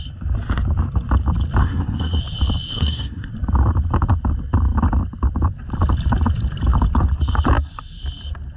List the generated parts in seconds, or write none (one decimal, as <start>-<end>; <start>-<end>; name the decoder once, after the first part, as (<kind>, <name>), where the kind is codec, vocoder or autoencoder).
1.6-2.2 (codec, SNAC); 2.7-3.3